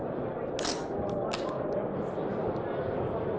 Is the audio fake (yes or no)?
no